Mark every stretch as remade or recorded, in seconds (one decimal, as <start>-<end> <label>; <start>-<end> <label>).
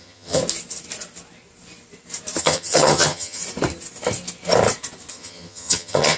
0.0-0.4 remade; 0.4-2.4 recorded; 2.4-3.4 remade; 3.4-5.1 recorded; 5.1-6.2 remade